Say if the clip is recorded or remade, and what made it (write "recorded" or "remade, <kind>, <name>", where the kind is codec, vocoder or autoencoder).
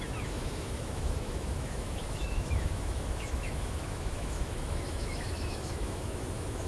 remade, autoencoder, DAC-VAE